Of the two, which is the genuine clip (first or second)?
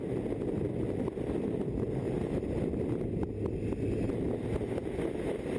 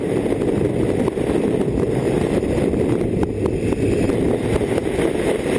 first